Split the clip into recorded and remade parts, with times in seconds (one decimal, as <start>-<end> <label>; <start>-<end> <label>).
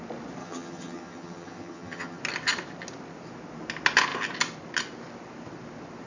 0.0-0.4 recorded; 0.4-2.2 remade; 2.2-6.1 recorded